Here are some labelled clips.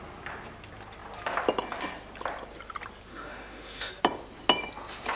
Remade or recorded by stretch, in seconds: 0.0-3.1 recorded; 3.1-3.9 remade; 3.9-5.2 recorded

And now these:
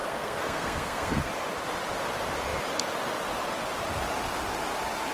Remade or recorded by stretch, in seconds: 0.0-1.3 remade; 1.3-5.1 recorded

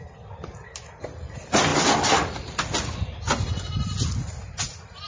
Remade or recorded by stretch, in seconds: 0.0-5.1 recorded

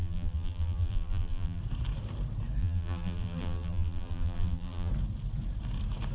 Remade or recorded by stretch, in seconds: 0.0-1.6 remade; 1.6-2.6 recorded; 2.6-4.9 remade; 4.9-6.1 recorded